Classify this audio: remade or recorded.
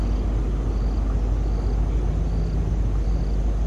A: recorded